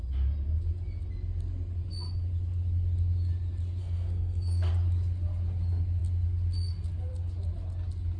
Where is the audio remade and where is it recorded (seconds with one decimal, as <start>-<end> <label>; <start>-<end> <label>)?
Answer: 0.0-3.8 recorded; 3.8-4.7 remade; 4.7-8.2 recorded